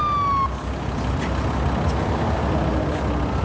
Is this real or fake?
real